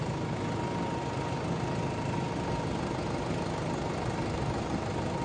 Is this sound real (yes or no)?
yes